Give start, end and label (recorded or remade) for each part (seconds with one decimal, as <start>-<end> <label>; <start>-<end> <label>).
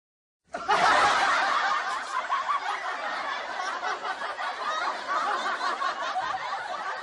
0.0-2.1 recorded; 2.1-2.7 remade; 2.7-7.0 recorded